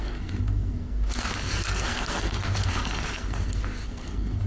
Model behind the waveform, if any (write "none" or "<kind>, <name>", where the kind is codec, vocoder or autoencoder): codec, SNAC